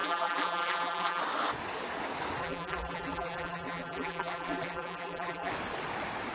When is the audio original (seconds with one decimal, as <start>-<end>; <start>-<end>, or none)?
1.2-2.4; 5.5-6.3